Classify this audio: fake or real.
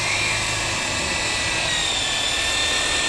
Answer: real